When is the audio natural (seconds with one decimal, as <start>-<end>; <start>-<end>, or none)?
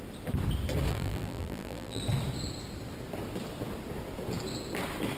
0.0-0.9; 2.0-5.2